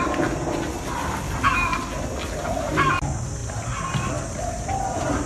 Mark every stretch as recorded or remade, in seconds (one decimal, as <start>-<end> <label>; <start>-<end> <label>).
0.0-5.3 recorded